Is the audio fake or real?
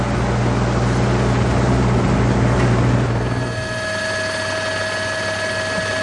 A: real